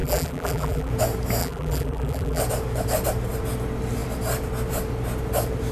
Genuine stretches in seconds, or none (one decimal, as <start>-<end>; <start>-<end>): 0.9-1.4; 2.4-5.7